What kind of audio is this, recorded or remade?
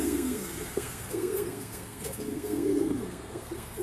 remade